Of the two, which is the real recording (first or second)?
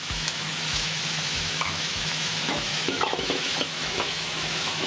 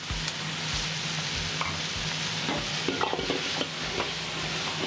second